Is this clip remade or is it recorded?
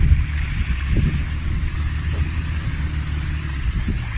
recorded